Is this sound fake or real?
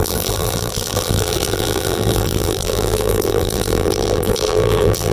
fake